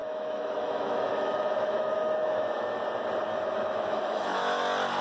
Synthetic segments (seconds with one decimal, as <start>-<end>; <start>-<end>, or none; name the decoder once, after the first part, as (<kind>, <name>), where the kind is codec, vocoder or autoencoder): 0.0-2.8 (autoencoder, DAC-VAE); 3.3-4.6